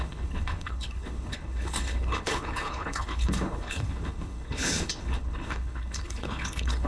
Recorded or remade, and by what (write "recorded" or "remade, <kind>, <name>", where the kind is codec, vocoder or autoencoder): remade, codec, HILCodec